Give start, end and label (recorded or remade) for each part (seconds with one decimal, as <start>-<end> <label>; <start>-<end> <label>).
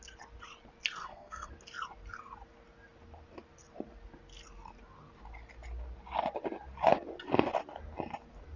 0.0-1.0 recorded; 1.0-1.5 remade; 1.5-8.6 recorded